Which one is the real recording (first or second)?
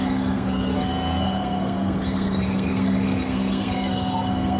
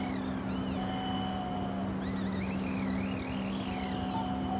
second